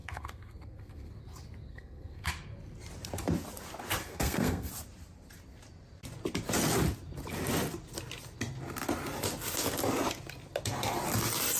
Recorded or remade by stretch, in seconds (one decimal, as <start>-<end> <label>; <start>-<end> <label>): 0.0-1.1 remade; 1.1-1.7 recorded; 1.7-2.3 remade; 2.3-4.0 recorded; 4.0-4.7 remade; 4.7-11.6 recorded